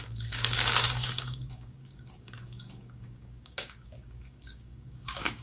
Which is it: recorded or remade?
remade